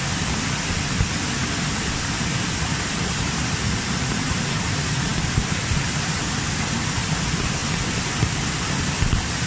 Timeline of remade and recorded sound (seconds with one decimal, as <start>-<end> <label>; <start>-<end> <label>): 0.0-9.5 recorded